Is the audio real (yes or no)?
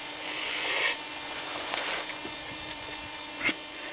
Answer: no